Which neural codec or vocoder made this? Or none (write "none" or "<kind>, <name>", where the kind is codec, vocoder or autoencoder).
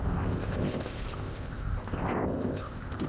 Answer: codec, ZipCodec